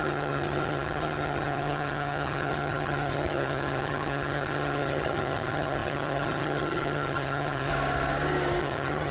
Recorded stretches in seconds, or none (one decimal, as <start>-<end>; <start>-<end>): 7.7-8.6